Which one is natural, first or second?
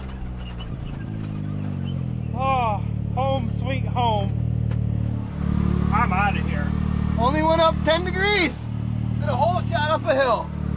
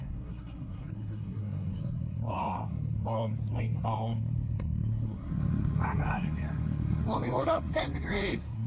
first